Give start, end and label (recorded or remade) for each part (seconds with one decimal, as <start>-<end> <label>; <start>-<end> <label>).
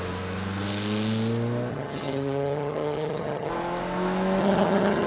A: 0.0-1.7 recorded; 1.7-3.5 remade; 3.5-4.4 recorded; 4.4-5.1 remade